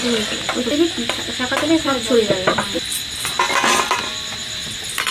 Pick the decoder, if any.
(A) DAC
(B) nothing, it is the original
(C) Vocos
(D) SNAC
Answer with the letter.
B